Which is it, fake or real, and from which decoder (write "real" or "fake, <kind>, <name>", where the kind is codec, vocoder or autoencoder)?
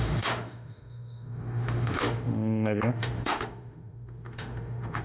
fake, autoencoder, DAC-VAE